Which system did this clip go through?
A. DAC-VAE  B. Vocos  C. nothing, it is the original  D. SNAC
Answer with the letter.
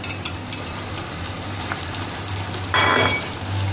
C